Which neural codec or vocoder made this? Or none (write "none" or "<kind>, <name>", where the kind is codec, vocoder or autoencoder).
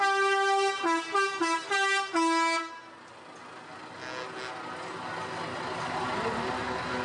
none